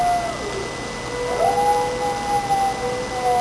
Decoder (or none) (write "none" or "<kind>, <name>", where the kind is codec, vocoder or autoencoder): none